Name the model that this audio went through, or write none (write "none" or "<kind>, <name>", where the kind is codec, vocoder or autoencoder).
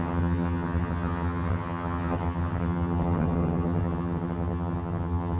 vocoder, HiFi-GAN